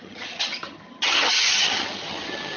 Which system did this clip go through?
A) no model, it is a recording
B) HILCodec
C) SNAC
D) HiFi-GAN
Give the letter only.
D